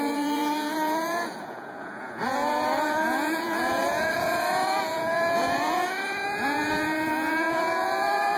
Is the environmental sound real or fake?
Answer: fake